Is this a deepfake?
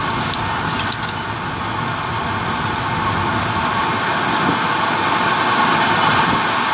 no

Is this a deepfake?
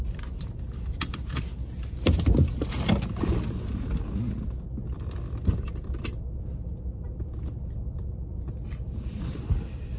no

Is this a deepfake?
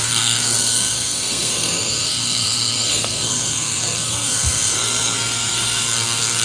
yes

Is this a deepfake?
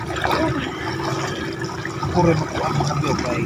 no